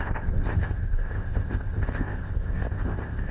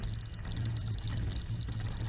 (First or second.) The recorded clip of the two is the second